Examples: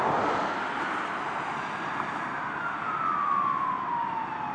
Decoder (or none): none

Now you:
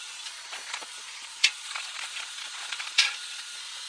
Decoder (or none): vocoder, Vocos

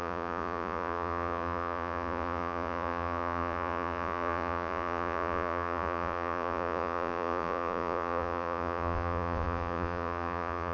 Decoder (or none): vocoder, Vocos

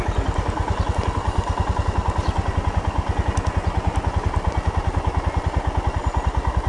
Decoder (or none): none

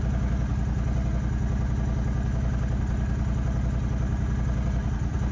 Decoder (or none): none